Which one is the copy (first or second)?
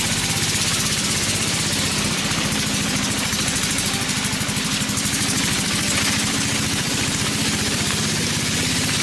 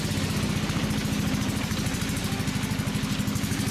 first